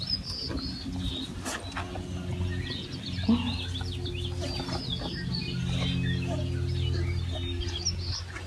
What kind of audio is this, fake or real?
real